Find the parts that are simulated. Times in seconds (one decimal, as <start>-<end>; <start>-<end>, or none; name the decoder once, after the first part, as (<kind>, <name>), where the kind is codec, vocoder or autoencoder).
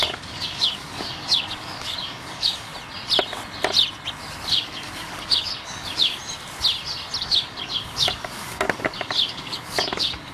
0.0-2.7 (codec, DAC); 4.5-6.2; 7.2-10.3